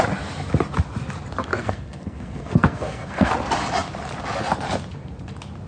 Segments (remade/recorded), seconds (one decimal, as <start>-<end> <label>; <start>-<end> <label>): 0.0-1.5 recorded; 1.5-3.3 remade; 3.3-5.7 recorded